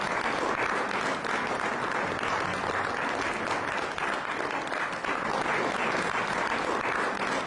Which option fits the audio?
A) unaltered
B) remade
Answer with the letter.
A